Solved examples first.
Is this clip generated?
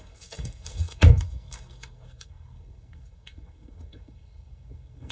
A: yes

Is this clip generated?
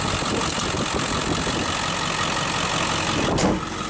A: no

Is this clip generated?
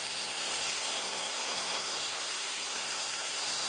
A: yes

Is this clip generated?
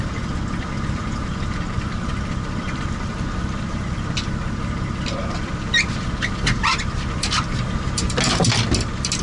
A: no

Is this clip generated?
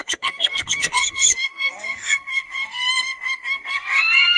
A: yes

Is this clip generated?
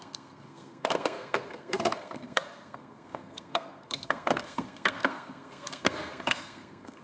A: yes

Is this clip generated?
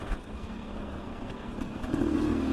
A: yes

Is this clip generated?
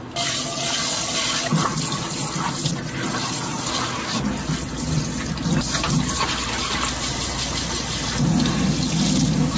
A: no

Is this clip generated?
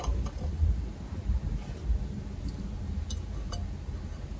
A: no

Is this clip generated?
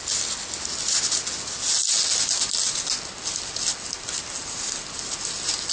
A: no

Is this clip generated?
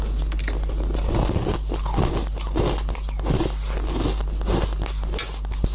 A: no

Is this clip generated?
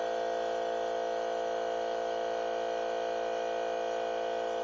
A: no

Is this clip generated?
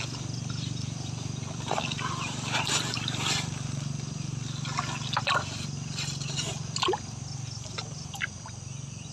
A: no